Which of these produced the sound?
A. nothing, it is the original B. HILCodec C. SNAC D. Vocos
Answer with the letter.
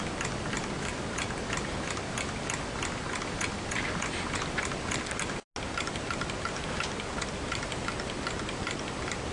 A